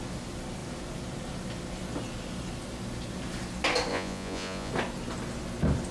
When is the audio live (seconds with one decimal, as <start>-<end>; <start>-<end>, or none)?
0.0-3.9; 4.7-5.9